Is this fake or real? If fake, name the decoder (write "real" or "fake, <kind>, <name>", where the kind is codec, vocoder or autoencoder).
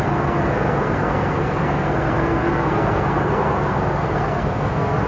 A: fake, codec, SNAC